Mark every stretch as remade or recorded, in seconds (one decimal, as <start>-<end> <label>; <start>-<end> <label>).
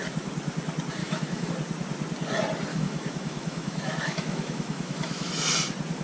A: 0.0-1.0 recorded; 1.0-1.5 remade; 1.5-2.7 recorded; 2.7-5.3 remade; 5.3-6.0 recorded